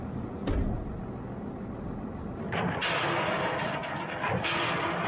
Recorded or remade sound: recorded